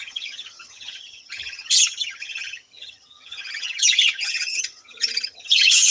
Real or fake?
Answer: fake